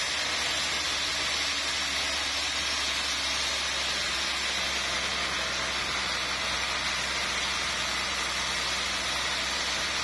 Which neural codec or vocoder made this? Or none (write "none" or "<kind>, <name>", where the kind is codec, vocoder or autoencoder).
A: none